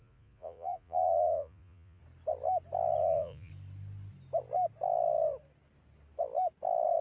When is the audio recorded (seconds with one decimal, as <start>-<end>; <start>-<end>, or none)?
2.0-3.0; 3.5-7.0